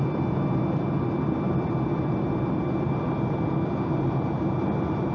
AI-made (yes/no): yes